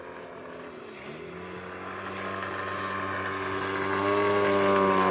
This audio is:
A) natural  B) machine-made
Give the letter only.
A